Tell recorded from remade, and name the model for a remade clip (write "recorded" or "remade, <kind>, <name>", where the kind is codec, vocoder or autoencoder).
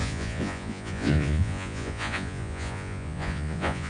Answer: remade, vocoder, Vocos